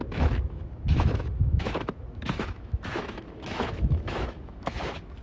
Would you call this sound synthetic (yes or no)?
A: yes